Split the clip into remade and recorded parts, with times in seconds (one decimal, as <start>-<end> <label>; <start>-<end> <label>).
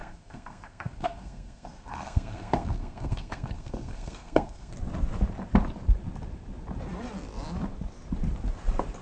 0.0-4.7 remade; 4.7-9.0 recorded